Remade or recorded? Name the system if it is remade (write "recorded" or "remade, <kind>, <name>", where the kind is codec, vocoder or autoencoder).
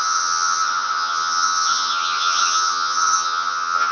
remade, vocoder, HiFi-GAN